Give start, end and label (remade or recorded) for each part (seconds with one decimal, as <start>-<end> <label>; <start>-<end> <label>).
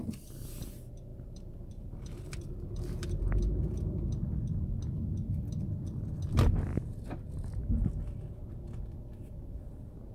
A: 0.0-1.1 recorded; 1.1-3.4 remade; 3.4-6.7 recorded; 6.7-7.9 remade; 7.9-10.1 recorded